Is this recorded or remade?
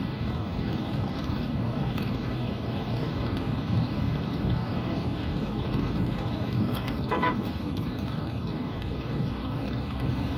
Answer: remade